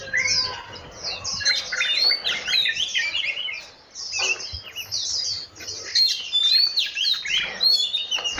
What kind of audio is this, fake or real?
real